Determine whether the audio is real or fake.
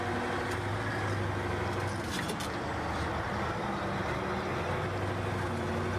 real